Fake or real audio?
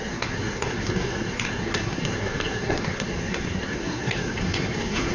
fake